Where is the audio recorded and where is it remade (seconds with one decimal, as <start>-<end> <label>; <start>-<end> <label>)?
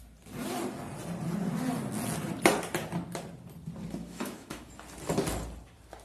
0.0-4.0 recorded; 4.0-4.7 remade; 4.7-6.0 recorded